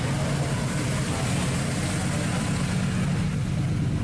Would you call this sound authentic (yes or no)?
yes